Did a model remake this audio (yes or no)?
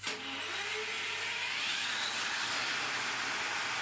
no